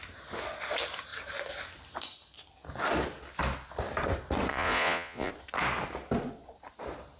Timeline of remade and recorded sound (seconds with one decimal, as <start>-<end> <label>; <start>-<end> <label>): 0.0-4.5 recorded; 4.5-5.3 remade; 5.3-7.2 recorded